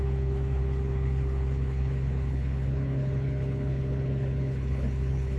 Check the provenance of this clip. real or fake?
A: fake